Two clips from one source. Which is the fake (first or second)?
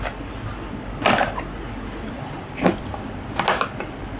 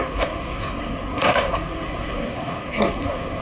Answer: second